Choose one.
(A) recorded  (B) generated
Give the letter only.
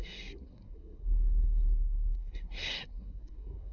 B